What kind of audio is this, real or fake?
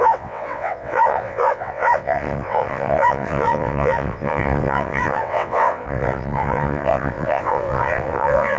fake